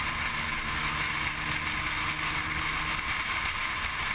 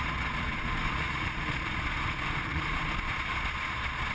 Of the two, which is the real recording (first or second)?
first